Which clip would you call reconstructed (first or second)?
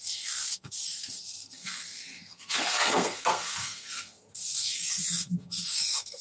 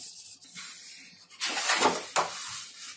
first